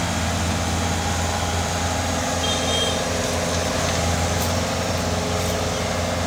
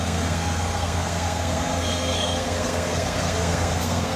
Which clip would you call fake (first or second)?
second